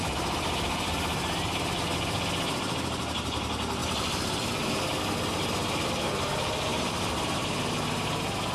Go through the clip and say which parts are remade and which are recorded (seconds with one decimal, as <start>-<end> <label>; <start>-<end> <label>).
0.0-3.8 recorded; 3.8-5.0 remade; 5.0-6.7 recorded; 6.7-7.6 remade; 7.6-8.5 recorded